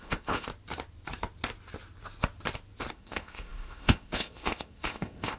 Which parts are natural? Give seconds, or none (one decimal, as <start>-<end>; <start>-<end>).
0.5-2.9